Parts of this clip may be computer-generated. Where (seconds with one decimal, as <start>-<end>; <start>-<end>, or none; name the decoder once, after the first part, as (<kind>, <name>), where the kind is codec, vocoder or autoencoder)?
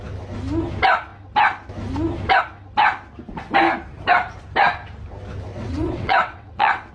5.5-6.9 (vocoder, WaveNeXt)